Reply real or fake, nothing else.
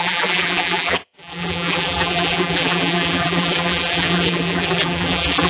fake